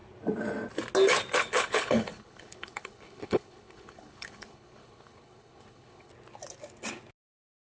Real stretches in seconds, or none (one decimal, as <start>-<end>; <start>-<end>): 0.0-1.4; 6.1-7.8